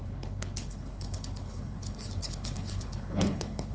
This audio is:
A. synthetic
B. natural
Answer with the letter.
A